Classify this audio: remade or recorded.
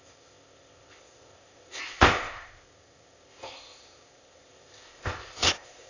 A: remade